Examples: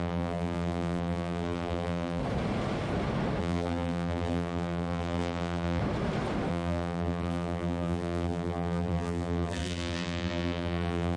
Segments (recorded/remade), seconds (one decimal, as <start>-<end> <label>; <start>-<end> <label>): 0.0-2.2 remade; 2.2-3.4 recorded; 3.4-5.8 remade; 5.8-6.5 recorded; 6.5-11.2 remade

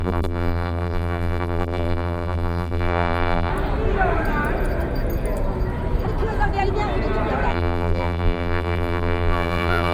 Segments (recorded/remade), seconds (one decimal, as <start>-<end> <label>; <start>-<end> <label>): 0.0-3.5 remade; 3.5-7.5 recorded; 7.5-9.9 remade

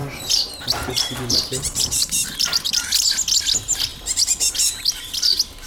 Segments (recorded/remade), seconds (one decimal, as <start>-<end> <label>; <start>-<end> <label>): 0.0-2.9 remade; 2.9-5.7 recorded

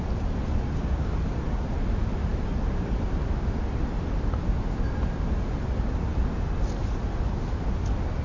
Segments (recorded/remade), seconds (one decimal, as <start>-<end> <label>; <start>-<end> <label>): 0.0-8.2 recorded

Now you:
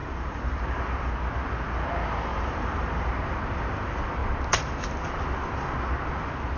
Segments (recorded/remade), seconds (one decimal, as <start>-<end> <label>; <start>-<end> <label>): 0.0-1.1 remade; 1.1-2.3 recorded; 2.3-3.1 remade; 3.1-6.6 recorded

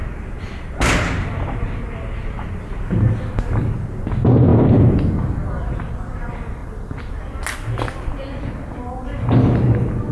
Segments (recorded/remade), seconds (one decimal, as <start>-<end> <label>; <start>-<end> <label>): 0.0-4.5 recorded; 4.5-5.7 remade; 5.7-6.6 recorded; 6.6-7.1 remade; 7.1-10.1 recorded

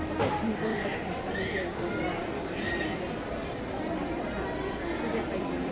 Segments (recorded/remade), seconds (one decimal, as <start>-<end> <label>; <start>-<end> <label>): 0.0-2.2 recorded; 2.2-5.7 remade